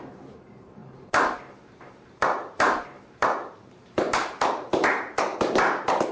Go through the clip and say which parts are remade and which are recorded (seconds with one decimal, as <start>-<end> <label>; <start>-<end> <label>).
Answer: 0.0-5.3 remade; 5.3-6.1 recorded